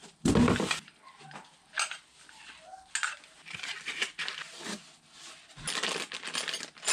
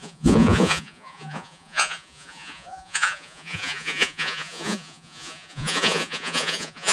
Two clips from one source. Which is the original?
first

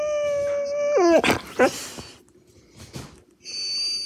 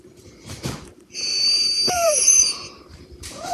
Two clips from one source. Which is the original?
first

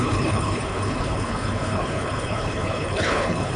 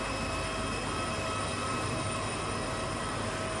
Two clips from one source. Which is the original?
second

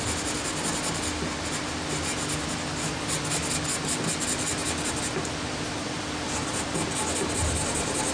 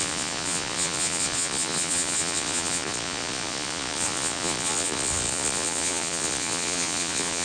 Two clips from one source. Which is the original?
first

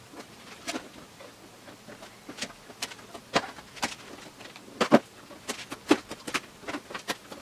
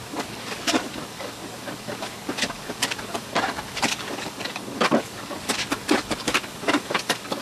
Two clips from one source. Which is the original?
first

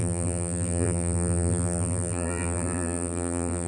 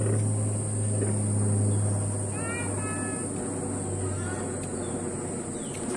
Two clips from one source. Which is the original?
second